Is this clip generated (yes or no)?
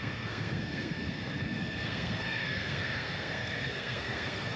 yes